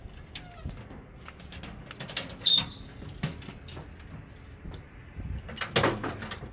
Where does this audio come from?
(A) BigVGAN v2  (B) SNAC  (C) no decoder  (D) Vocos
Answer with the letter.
C